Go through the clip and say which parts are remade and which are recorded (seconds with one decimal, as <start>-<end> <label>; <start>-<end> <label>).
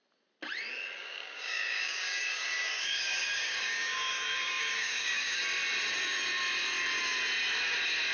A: 0.0-1.0 recorded; 1.0-5.4 remade; 5.4-8.1 recorded